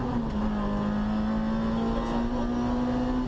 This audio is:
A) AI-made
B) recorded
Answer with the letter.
B